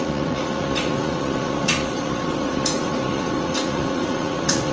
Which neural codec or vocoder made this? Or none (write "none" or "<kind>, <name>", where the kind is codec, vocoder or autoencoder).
vocoder, Vocos